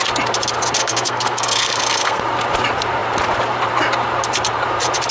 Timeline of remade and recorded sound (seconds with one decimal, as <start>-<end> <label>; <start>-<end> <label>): 0.0-0.8 recorded; 0.8-2.2 remade; 2.2-5.1 recorded